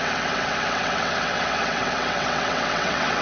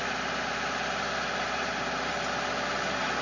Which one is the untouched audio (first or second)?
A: second